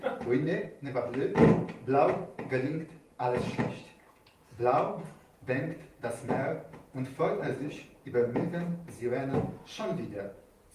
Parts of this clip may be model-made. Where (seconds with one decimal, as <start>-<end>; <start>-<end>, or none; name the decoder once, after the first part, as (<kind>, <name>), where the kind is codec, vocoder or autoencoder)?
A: 0.0-0.9 (vocoder, Vocos); 2.3-10.7